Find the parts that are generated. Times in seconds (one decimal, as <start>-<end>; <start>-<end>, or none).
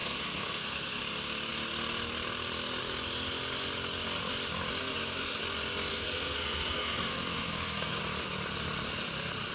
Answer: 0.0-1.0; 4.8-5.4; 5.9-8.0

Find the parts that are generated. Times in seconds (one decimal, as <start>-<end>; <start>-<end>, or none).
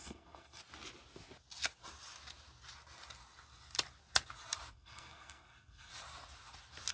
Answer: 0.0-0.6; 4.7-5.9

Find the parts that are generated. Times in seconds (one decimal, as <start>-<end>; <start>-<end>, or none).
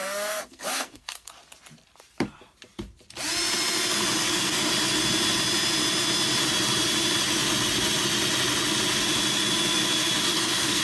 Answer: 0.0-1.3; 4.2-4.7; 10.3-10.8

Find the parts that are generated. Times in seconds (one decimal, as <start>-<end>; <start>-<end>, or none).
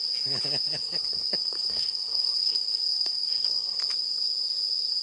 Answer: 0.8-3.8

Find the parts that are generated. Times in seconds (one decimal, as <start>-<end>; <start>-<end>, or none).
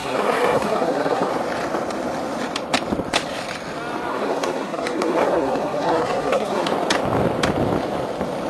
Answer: 0.0-1.3; 4.1-6.7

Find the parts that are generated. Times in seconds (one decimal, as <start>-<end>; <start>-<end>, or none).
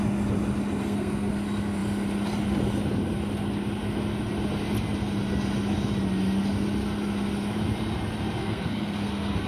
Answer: 0.8-1.3; 8.4-9.5